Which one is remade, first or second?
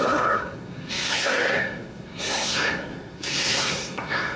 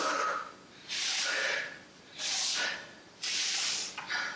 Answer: first